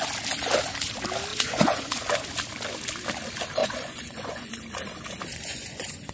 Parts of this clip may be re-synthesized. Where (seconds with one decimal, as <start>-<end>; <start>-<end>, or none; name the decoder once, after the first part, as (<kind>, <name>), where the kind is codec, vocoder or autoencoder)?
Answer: 1.3-2.0 (vocoder, Vocos); 3.6-4.5; 5.3-6.1